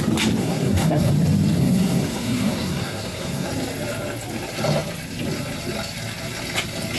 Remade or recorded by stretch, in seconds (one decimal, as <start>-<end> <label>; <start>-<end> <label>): 0.0-0.4 recorded; 0.4-1.1 remade; 1.1-1.6 recorded; 1.6-3.5 remade; 3.5-7.0 recorded